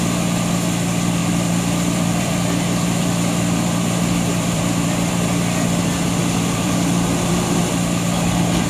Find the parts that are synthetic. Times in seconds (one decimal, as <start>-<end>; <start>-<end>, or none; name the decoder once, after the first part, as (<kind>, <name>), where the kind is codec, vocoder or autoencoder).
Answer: 1.2-5.1 (vocoder, BigVGAN v2); 6.2-7.6